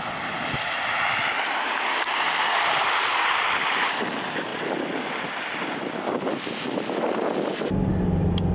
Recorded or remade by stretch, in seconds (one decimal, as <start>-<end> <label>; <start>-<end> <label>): 0.0-1.9 recorded; 1.9-2.6 remade; 2.6-8.5 recorded